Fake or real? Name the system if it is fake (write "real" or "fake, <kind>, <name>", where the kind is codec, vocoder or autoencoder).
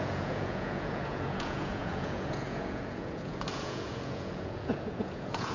fake, vocoder, Vocos